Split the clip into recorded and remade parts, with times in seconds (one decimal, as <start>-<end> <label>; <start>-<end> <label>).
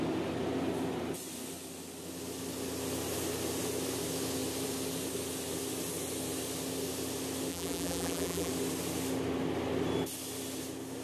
0.0-7.5 recorded; 7.5-8.5 remade; 8.5-11.0 recorded